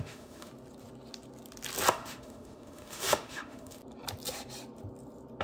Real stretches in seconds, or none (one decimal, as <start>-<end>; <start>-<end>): 0.5-1.9; 3.8-5.4